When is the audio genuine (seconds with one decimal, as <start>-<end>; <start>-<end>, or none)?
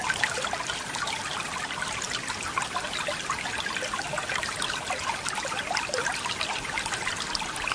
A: 0.0-7.7